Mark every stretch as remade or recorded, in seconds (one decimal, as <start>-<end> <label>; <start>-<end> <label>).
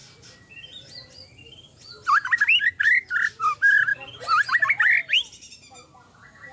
0.0-6.5 recorded